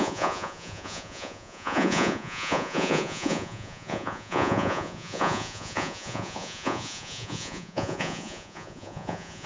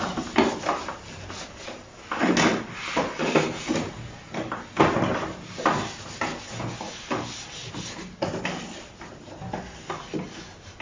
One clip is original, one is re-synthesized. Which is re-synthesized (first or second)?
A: first